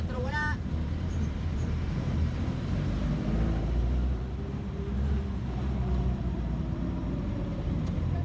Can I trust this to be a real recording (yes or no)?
no